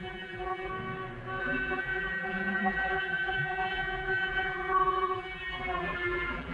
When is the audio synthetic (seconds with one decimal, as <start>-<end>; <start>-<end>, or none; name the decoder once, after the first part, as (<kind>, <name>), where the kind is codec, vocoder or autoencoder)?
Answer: 0.0-0.7 (vocoder, BigVGAN v2); 1.4-6.5